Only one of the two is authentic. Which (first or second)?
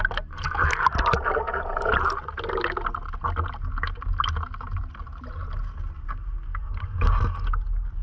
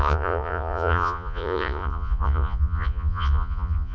first